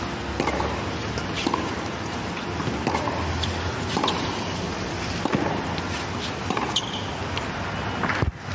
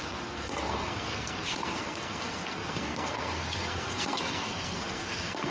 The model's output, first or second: second